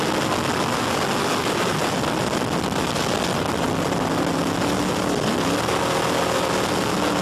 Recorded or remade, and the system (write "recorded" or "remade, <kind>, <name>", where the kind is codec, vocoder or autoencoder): recorded